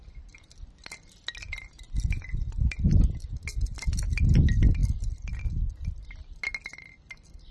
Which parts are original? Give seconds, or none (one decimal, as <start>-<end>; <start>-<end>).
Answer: 0.0-7.5